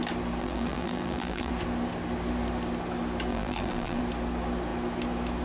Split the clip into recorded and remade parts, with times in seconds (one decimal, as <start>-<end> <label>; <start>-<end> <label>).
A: 0.0-0.4 recorded; 0.4-1.5 remade; 1.5-3.3 recorded; 3.3-4.0 remade; 4.0-5.4 recorded